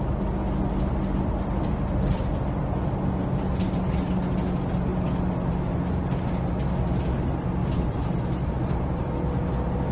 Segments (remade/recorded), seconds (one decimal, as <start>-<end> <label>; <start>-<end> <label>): 0.0-7.6 recorded; 7.6-9.0 remade; 9.0-9.9 recorded